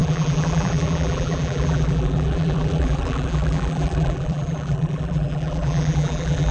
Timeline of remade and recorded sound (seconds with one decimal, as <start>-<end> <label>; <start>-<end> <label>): 0.0-6.5 remade